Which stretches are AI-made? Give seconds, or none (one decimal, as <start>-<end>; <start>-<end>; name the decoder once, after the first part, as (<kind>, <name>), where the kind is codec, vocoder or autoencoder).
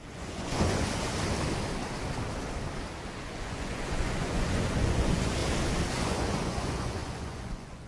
0.0-1.1 (vocoder, Vocos); 3.2-5.4; 5.9-7.9